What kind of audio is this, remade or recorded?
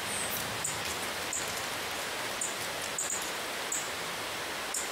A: recorded